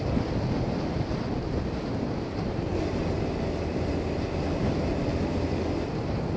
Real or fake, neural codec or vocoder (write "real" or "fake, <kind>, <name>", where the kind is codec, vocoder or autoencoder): real